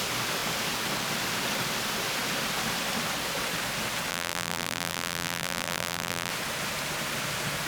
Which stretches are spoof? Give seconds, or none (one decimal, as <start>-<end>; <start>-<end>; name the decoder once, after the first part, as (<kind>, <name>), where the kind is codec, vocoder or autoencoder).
4.1-6.3 (vocoder, BigVGAN v2)